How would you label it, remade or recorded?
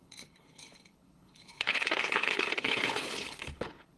remade